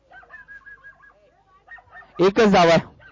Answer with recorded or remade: recorded